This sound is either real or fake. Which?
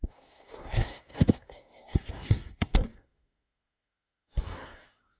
fake